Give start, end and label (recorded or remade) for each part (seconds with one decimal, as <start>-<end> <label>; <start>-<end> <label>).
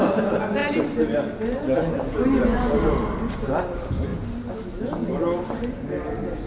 0.0-6.5 recorded